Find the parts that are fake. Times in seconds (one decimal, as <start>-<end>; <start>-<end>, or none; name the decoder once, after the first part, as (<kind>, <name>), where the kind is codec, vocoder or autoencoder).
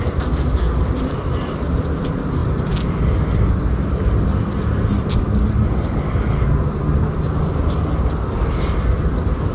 none